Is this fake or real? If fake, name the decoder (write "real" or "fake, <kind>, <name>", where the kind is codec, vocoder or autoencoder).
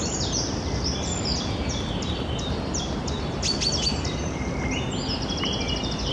real